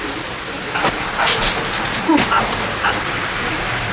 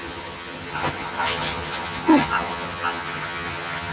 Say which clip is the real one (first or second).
first